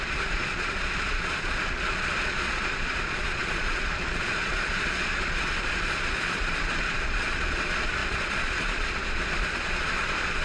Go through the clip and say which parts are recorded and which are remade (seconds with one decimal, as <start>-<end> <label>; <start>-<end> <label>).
0.0-10.4 remade